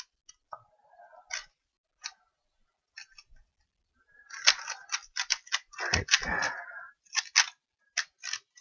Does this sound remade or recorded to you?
recorded